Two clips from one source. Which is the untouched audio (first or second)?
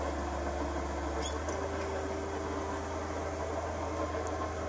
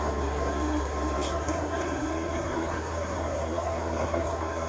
first